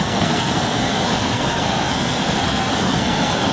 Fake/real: fake